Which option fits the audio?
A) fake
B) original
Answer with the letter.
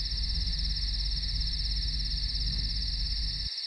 B